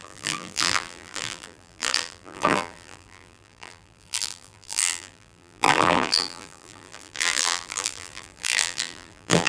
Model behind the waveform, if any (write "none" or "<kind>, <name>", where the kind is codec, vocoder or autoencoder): vocoder, BigVGAN v2